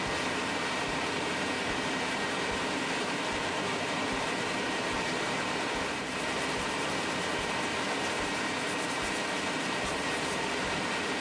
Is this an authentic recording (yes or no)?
no